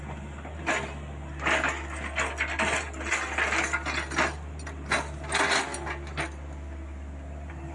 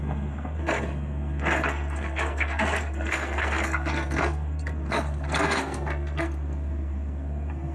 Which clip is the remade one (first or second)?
second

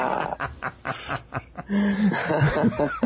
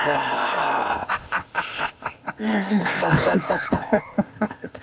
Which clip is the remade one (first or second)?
second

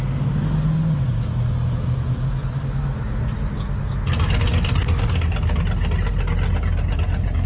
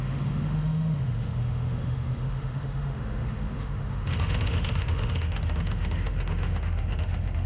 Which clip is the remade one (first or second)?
second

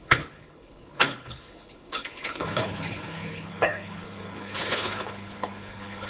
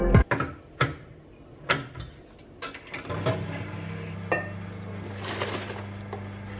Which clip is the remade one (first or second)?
first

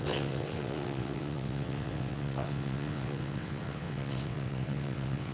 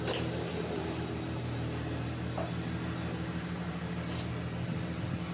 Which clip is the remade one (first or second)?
first